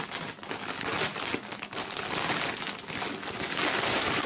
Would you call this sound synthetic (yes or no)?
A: no